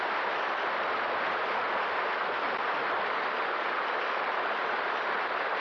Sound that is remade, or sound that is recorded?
recorded